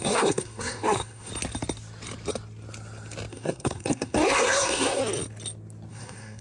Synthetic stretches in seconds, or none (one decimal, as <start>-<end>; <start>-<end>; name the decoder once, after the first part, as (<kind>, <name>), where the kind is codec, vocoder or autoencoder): 0.0-1.3 (codec, SNAC); 3.3-5.0; 5.9-6.4